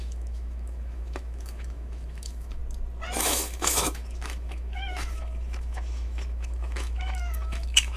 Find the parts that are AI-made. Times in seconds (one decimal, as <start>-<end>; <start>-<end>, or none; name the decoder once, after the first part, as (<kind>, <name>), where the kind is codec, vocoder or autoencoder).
0.0-2.6 (autoencoder, DAC-VAE); 3.2-8.0